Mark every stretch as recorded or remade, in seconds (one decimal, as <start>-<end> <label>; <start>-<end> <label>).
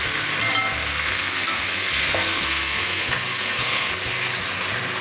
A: 0.0-0.9 recorded; 0.9-3.9 remade; 3.9-5.0 recorded